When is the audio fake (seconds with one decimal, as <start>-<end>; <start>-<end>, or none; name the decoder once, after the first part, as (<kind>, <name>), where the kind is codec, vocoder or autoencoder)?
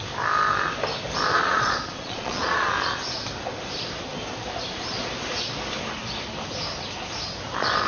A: 1.3-2.7 (vocoder, Vocos)